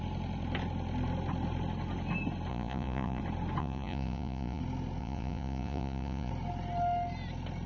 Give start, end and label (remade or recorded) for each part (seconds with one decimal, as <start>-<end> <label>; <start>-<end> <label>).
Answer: 0.0-2.5 recorded; 2.5-3.2 remade; 3.2-3.6 recorded; 3.6-4.6 remade; 4.6-5.0 recorded; 5.0-6.3 remade; 6.3-7.7 recorded